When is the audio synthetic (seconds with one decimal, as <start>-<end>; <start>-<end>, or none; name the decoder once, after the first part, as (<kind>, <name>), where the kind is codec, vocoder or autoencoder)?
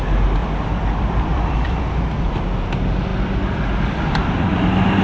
0.4-1.9 (vocoder, BigVGAN v2); 3.1-4.3